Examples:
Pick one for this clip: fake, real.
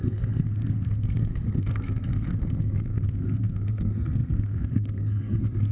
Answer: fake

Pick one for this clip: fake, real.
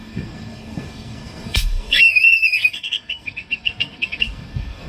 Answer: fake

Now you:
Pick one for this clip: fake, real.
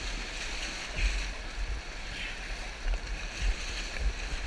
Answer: real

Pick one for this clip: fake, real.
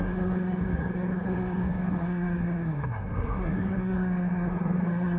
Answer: fake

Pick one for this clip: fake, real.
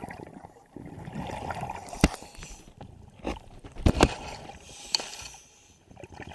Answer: real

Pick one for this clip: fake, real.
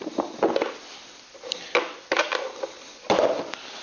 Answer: real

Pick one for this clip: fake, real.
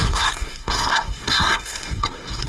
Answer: fake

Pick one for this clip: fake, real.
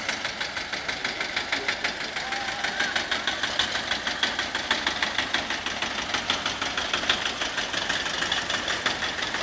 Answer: real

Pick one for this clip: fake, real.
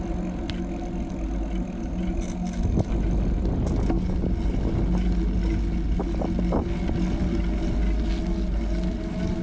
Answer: real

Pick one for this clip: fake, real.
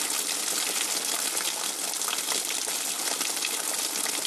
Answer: real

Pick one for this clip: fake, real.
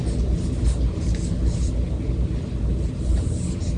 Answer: real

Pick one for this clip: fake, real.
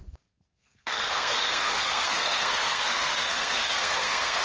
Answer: fake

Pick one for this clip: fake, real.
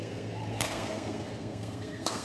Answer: fake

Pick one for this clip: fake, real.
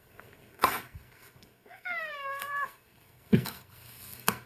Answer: fake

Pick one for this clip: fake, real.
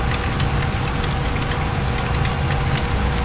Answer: real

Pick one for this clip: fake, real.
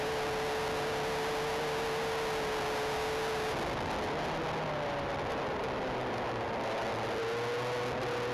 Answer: real